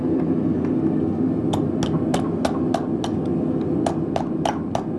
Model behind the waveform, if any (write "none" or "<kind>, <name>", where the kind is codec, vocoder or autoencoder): none